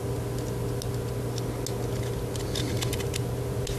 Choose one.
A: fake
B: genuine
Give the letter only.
B